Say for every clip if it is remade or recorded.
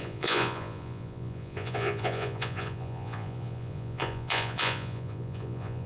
remade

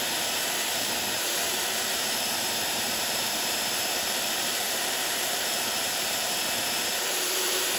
remade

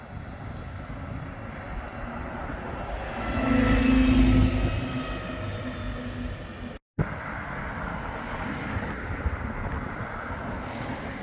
recorded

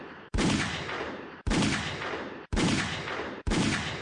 remade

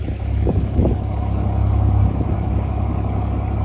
remade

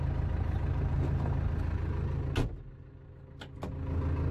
recorded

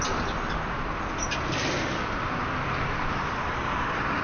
recorded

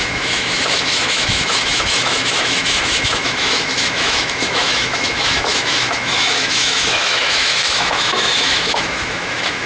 remade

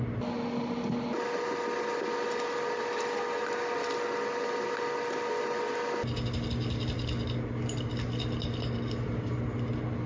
recorded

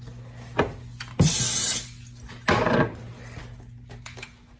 recorded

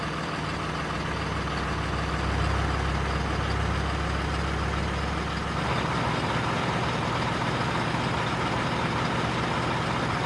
recorded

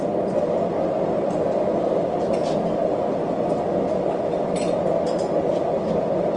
recorded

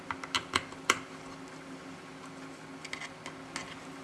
recorded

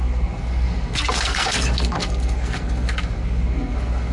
remade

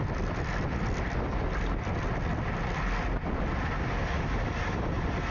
recorded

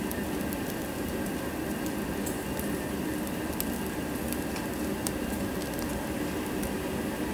recorded